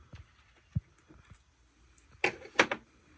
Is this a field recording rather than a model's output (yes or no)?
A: yes